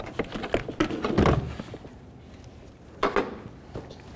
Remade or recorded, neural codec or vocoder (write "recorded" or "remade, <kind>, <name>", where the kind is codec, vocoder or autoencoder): recorded